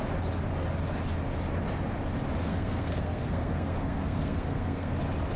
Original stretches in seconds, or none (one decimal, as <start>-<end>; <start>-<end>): 0.0-2.5; 4.9-5.4